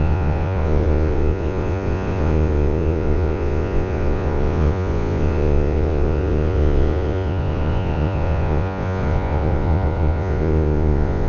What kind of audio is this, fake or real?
fake